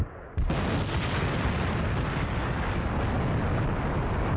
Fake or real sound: real